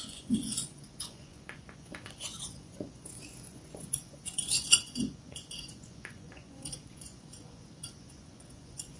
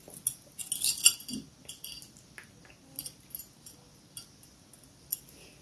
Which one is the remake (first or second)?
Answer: first